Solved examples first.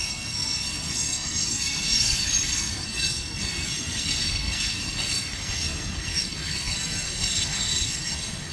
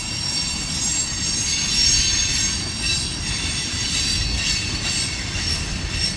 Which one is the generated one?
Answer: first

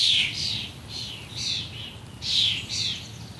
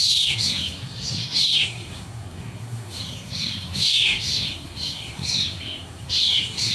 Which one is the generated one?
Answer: second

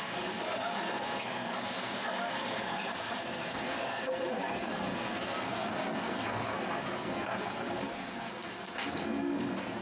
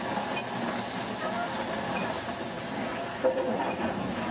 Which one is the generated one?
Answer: first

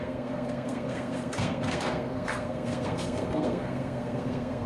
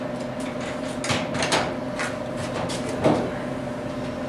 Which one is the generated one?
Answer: first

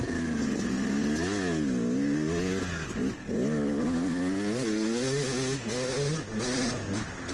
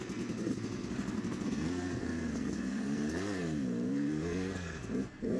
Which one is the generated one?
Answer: second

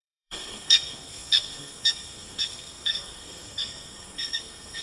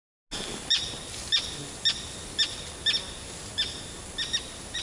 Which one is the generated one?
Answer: first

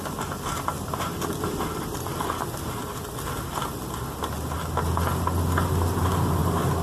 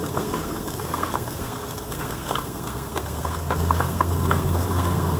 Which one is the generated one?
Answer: second